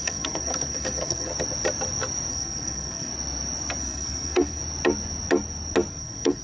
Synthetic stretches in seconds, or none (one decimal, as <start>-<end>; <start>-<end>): 0.0-1.3; 2.3-3.1; 3.8-4.6; 5.9-6.4